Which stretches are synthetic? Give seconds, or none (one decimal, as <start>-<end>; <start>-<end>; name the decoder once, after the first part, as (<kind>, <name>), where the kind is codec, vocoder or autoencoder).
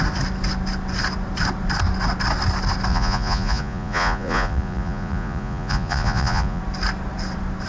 2.9-6.6 (vocoder, Vocos)